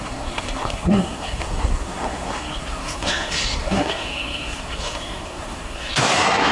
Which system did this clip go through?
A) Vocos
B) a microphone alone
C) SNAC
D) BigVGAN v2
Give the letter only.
C